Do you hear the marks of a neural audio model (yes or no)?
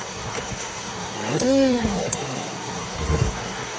yes